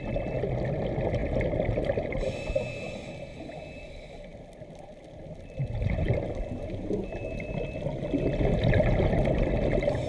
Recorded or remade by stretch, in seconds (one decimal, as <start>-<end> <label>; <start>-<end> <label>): 0.0-10.1 recorded